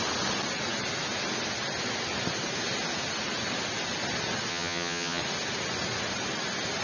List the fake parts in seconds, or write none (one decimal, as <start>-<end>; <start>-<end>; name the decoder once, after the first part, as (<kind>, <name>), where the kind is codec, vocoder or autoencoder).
4.5-5.2 (vocoder, HiFi-GAN)